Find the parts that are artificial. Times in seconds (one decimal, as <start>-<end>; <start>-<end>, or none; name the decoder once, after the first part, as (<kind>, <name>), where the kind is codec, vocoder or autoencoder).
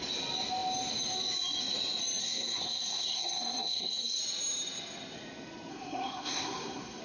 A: 2.2-4.2 (codec, SNAC); 5.7-7.0